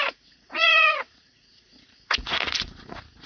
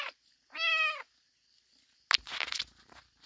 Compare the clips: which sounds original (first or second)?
second